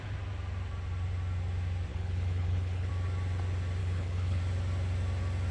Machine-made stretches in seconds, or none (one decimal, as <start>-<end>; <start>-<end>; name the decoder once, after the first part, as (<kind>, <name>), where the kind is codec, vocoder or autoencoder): 1.9-2.9 (codec, HILCodec); 3.8-4.4